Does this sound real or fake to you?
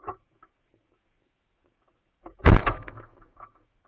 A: fake